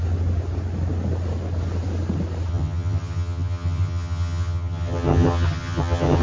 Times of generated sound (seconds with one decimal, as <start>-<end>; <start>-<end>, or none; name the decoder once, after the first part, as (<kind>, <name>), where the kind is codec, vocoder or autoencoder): 2.5-6.2 (vocoder, HiFi-GAN)